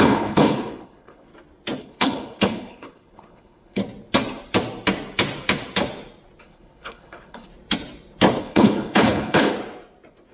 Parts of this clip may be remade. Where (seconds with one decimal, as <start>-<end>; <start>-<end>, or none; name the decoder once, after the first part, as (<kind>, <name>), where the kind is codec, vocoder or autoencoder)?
0.0-1.3 (codec, HILCodec); 1.8-3.8; 6.4-7.5; 8.4-9.5